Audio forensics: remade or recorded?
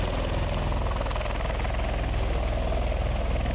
recorded